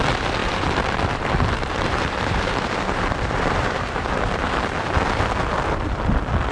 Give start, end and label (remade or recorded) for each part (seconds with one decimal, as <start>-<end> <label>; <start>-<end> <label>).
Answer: 0.0-0.4 recorded; 0.4-4.3 remade; 4.3-6.5 recorded